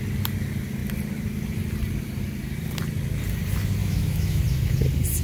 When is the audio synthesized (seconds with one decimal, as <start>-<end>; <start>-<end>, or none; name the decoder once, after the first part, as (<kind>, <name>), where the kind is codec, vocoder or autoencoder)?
3.8-4.4 (autoencoder, DAC-VAE)